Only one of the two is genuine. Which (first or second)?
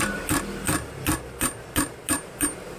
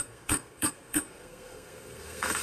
first